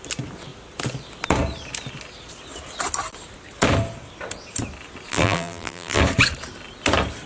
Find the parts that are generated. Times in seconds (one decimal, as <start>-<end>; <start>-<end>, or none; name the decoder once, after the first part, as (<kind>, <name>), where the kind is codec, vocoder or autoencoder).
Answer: 5.1-6.0 (vocoder, BigVGAN v2)